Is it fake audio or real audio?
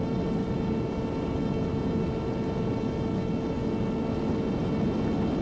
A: real